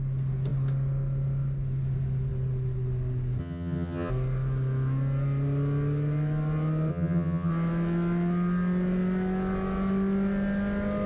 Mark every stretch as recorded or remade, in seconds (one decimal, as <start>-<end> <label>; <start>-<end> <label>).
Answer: 0.0-3.4 recorded; 3.4-4.1 remade; 4.1-6.9 recorded; 6.9-7.5 remade; 7.5-11.1 recorded